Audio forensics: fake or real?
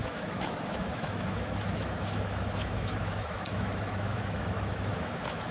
fake